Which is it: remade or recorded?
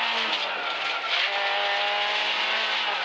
recorded